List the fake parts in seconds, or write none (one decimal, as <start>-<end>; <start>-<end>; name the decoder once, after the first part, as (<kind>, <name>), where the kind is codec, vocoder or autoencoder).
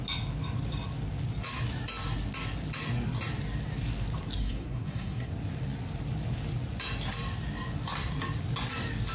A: 4.4-5.3 (codec, SNAC)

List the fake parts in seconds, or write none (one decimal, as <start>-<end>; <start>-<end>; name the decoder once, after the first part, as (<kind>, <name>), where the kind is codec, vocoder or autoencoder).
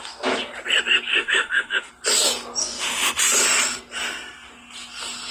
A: 1.1-1.9 (autoencoder, DAC-VAE); 2.6-3.2